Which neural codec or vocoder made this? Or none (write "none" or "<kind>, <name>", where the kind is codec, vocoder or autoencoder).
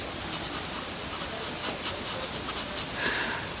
none